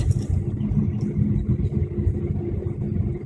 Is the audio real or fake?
real